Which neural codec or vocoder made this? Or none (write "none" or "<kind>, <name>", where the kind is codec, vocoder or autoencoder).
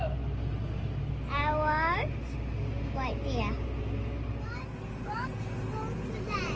none